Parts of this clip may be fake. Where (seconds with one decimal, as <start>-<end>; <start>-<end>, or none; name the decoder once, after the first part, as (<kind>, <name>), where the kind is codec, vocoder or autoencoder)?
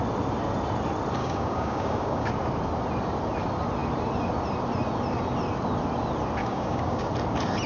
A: 1.2-2.3 (codec, DAC); 6.4-7.1